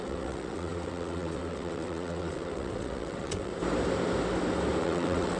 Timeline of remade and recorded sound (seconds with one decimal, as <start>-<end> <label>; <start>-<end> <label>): 0.0-3.5 remade; 3.5-4.8 recorded; 4.8-5.4 remade